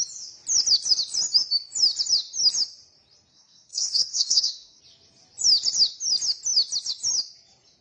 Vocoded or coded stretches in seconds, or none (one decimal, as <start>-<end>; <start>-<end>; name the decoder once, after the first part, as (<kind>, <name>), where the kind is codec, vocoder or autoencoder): 3.3-4.8 (codec, SNAC)